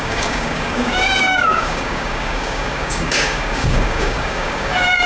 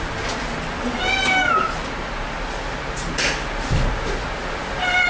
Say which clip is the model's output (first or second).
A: first